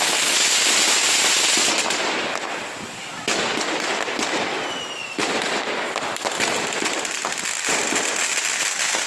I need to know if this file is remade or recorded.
recorded